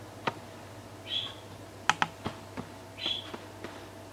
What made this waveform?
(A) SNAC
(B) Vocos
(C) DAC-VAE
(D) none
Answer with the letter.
D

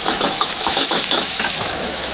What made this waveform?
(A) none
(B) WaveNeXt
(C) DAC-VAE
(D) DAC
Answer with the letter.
C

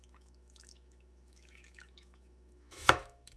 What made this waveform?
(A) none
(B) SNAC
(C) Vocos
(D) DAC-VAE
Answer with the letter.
D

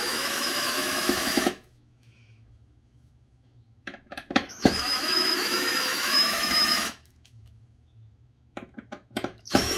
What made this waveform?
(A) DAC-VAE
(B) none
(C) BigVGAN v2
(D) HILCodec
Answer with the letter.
A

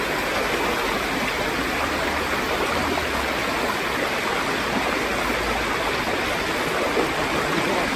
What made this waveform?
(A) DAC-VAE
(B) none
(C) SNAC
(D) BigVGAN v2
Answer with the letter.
B